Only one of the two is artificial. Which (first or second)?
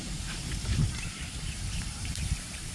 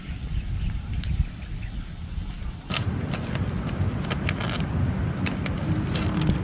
first